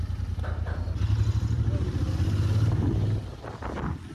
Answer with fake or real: real